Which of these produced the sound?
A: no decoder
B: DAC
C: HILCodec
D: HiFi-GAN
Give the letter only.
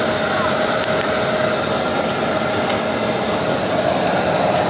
A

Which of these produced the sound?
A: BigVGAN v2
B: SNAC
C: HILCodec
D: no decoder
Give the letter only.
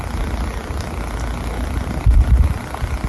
D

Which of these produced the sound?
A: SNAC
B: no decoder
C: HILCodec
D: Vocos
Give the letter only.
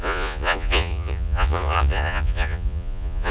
D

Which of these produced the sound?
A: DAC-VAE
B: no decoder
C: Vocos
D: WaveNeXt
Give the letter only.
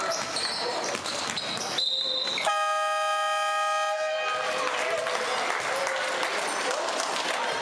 B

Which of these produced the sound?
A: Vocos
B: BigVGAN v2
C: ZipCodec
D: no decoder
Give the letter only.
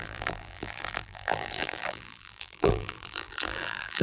B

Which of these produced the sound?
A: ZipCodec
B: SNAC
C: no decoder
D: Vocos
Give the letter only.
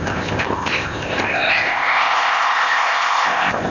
A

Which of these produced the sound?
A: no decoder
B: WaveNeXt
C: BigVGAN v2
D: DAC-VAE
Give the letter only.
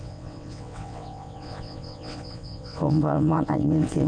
B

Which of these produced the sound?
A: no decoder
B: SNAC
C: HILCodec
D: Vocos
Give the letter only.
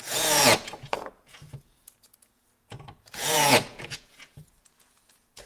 D